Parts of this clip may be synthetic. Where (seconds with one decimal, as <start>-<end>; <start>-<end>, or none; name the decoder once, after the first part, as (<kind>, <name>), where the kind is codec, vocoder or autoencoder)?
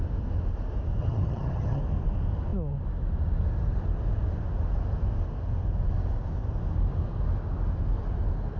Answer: 1.0-1.8 (vocoder, HiFi-GAN)